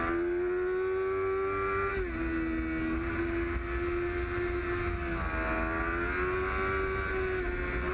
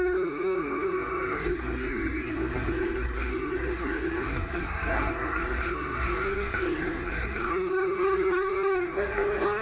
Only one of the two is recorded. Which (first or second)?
first